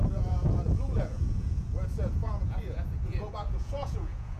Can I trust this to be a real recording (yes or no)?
no